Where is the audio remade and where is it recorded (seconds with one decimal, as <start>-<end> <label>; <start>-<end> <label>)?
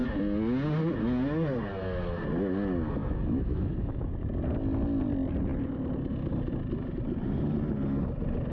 0.0-3.0 recorded; 3.0-4.1 remade; 4.1-8.5 recorded